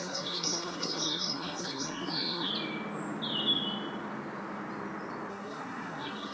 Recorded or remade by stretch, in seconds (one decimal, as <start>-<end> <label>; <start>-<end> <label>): 0.0-2.5 remade; 2.5-5.3 recorded; 5.3-6.3 remade